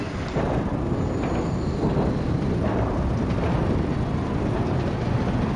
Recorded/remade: recorded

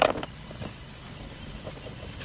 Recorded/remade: recorded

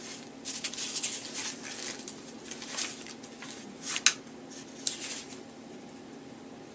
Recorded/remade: recorded